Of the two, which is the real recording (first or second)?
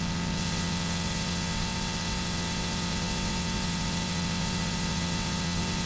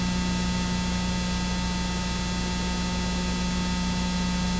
second